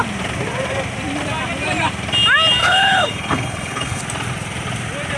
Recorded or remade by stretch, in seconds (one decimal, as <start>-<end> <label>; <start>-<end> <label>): 0.0-2.6 recorded; 2.6-4.0 remade; 4.0-5.2 recorded